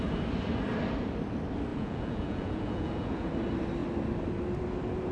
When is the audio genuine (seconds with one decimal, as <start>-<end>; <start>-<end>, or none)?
0.0-1.7; 3.3-5.1